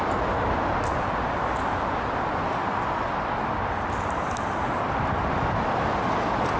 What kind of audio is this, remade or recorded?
recorded